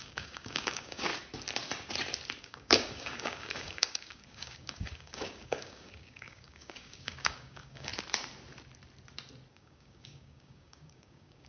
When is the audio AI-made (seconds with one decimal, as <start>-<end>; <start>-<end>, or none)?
0.0-1.1; 2.4-7.9; 9.5-11.5

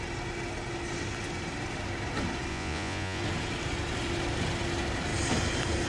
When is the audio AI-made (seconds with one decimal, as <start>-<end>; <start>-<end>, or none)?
2.5-3.2